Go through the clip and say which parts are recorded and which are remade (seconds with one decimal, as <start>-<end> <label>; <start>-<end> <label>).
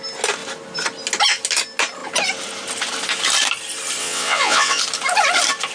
0.0-4.0 recorded; 4.0-4.8 remade; 4.8-5.7 recorded